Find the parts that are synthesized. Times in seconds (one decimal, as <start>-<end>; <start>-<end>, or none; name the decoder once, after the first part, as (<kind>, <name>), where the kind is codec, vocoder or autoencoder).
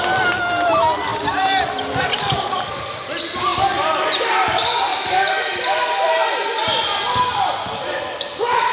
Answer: 1.1-2.8 (vocoder, BigVGAN v2); 3.5-4.3; 4.9-6.3